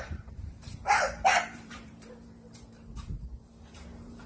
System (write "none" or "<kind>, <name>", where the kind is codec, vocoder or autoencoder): vocoder, BigVGAN v2